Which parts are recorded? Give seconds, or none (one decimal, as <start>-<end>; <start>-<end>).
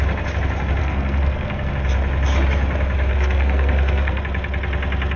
0.0-0.8; 1.7-3.1; 4.2-5.2